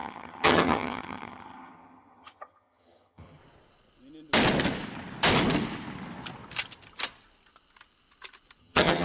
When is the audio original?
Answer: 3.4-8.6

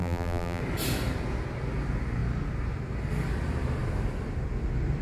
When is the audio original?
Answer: 0.6-5.0

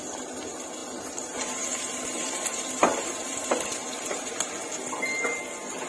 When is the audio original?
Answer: 0.0-0.8; 4.3-5.9

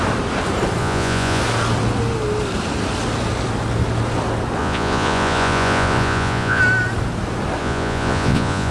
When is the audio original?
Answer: 0.0-0.8; 1.4-4.6; 6.6-7.6

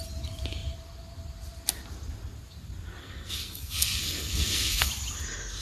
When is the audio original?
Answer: 0.0-3.0; 4.9-5.6